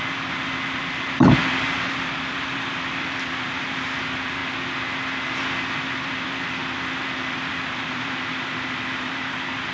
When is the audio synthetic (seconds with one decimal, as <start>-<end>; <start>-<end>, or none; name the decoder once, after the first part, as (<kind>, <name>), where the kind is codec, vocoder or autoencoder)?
0.0-4.4 (vocoder, BigVGAN v2); 5.9-9.7

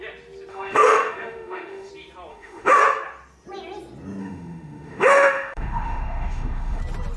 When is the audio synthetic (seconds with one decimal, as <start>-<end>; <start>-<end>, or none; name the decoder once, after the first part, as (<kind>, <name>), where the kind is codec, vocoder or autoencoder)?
0.5-1.9 (autoencoder, DAC-VAE); 2.3-2.8; 4.2-6.8

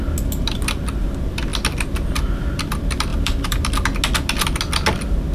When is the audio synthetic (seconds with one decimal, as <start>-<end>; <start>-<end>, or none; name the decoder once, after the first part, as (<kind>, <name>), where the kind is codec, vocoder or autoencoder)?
3.1-3.7 (vocoder, BigVGAN v2)